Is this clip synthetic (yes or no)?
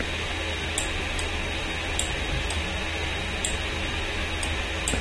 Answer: no